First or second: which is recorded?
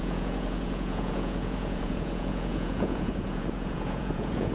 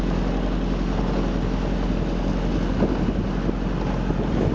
second